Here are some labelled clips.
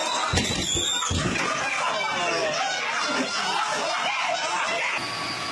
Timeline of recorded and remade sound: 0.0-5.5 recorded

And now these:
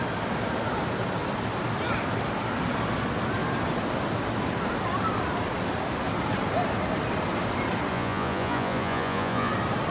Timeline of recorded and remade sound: 0.0-7.9 recorded; 7.9-9.5 remade; 9.5-9.9 recorded

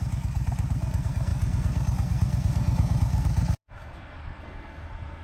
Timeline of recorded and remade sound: 0.0-5.2 remade